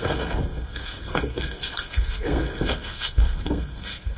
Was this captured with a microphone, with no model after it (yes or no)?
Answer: no